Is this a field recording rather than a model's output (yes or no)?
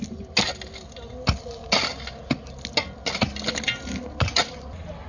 yes